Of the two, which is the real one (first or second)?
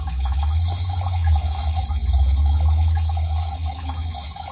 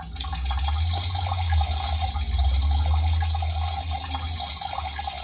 second